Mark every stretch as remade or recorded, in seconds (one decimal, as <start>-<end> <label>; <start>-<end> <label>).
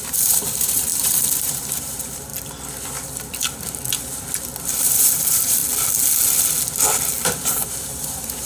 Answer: 0.0-2.3 remade; 2.3-4.8 recorded; 4.8-5.6 remade; 5.6-7.2 recorded; 7.2-8.5 remade